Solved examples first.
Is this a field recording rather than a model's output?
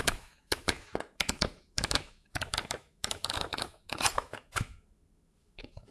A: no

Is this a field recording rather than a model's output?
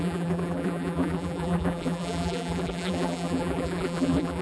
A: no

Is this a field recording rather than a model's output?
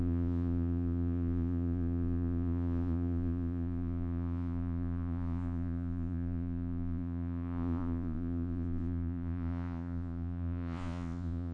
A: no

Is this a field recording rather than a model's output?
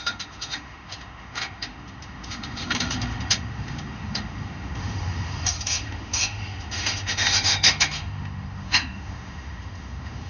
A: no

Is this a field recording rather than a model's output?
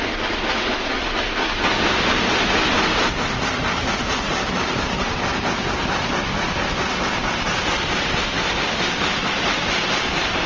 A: yes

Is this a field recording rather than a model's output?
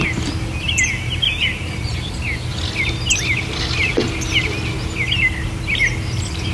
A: yes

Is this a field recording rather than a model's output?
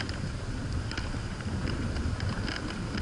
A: yes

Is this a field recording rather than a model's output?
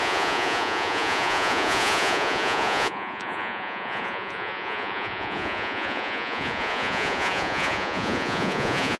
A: no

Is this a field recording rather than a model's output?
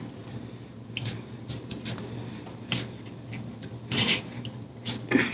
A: yes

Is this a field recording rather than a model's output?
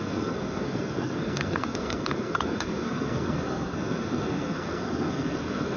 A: no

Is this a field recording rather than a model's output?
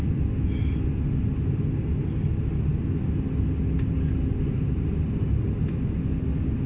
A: yes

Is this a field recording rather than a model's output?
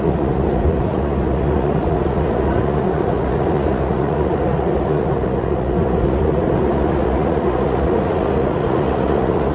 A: no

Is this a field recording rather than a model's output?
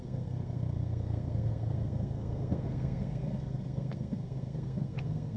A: no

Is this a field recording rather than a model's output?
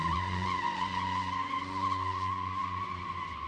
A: no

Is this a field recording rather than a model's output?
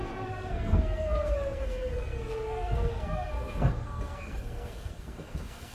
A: no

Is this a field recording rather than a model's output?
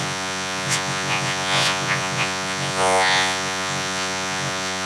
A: no